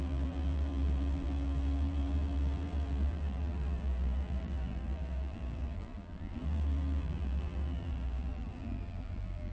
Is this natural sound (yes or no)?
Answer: no